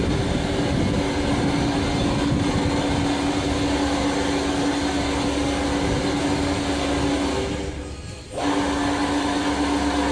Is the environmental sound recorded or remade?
recorded